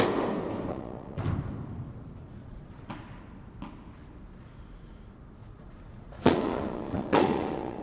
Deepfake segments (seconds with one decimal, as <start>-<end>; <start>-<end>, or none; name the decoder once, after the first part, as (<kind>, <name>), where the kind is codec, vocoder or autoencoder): 0.7-1.2 (vocoder, Vocos); 2.4-2.9; 5.4-7.8